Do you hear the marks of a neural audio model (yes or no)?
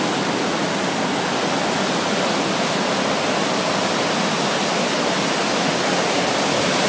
no